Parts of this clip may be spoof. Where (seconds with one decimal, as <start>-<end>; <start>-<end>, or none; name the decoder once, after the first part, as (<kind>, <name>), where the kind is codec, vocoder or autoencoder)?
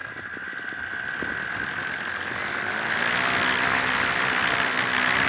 none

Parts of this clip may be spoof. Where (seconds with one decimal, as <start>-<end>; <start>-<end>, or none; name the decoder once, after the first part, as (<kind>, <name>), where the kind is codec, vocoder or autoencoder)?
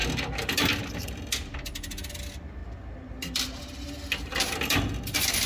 none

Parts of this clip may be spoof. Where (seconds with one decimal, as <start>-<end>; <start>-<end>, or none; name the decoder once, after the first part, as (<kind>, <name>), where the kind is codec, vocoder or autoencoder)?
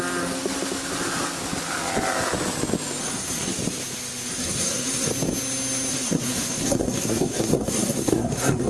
3.0-3.6 (codec, SNAC); 4.3-5.1; 5.9-8.7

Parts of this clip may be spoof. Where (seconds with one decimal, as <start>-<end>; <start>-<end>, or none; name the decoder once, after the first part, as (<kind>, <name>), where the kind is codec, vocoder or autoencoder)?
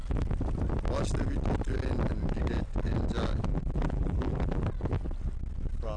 3.5-4.6 (vocoder, BigVGAN v2)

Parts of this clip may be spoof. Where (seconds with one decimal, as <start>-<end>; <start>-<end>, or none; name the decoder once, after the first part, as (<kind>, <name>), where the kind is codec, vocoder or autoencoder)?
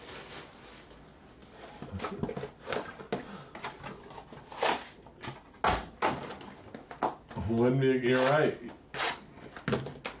none